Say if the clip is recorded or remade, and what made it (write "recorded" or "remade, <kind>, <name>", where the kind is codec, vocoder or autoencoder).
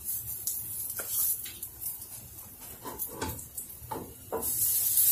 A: recorded